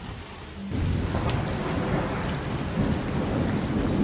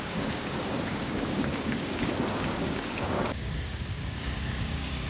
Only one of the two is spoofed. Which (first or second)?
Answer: second